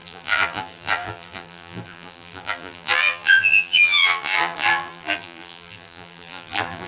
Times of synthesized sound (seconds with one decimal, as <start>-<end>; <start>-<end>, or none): 0.0-6.9